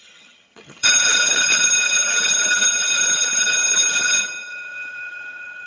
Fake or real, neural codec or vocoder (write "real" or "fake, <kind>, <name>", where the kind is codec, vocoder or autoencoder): fake, vocoder, HiFi-GAN